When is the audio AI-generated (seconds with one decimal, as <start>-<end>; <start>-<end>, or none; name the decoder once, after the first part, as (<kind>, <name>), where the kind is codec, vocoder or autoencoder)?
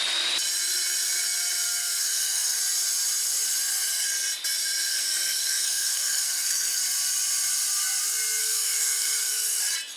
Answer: 1.8-2.6 (codec, SNAC); 4.9-6.8; 8.4-9.6